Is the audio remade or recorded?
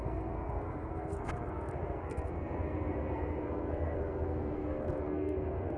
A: remade